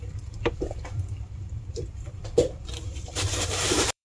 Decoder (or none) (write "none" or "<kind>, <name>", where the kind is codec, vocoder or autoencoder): vocoder, BigVGAN v2